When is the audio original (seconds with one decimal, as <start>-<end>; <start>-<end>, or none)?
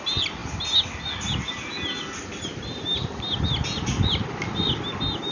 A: 0.0-5.3